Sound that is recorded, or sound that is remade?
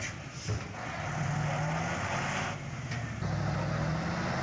recorded